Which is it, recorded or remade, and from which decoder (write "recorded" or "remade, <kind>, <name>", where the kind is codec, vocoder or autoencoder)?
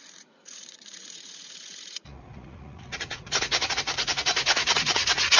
remade, vocoder, Vocos